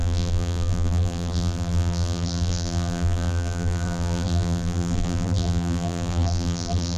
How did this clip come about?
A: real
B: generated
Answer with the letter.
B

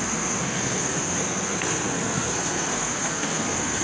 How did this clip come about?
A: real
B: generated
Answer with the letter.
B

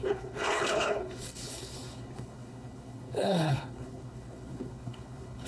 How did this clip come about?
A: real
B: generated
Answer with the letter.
B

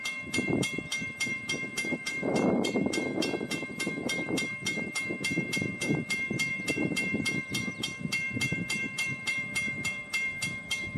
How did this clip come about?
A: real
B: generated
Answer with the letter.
B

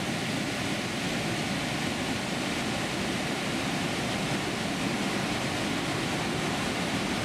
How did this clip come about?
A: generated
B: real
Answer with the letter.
B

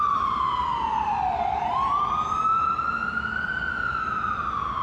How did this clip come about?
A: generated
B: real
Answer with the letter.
B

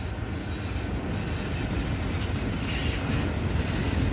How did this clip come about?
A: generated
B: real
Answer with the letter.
B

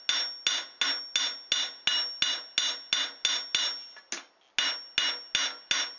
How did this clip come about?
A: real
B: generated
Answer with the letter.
A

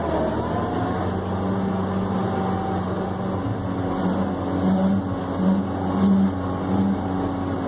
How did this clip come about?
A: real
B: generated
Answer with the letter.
A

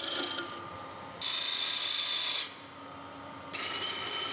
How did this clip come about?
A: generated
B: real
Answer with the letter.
B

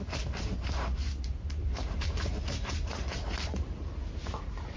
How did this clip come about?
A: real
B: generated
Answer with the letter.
B